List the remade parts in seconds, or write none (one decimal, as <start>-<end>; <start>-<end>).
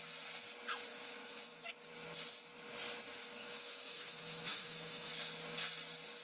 0.9-1.7; 3.2-5.1